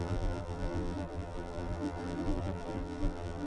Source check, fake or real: fake